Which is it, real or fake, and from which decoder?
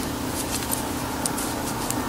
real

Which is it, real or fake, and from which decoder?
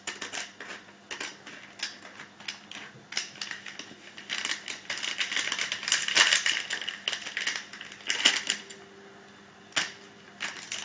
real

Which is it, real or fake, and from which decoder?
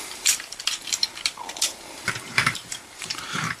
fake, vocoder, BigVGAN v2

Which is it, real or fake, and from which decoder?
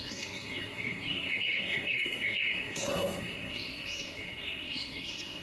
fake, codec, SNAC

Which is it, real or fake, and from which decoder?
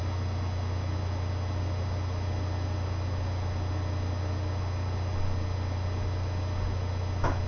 real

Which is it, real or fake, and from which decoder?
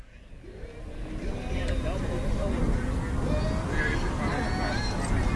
real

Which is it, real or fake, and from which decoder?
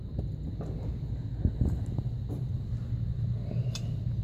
real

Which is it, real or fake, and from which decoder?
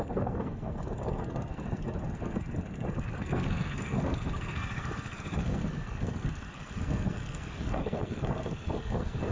fake, codec, SNAC